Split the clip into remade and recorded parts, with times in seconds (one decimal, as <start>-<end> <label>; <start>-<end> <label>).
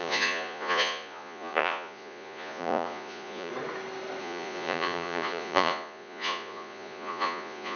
0.0-3.5 remade; 3.5-4.2 recorded; 4.2-7.8 remade